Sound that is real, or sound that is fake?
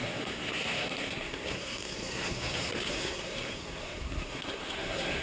fake